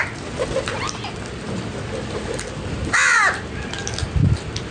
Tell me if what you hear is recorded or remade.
recorded